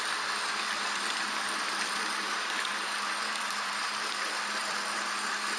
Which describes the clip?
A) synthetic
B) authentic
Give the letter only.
A